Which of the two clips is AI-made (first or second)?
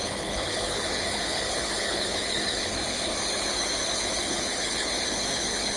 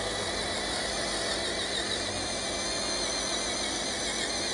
first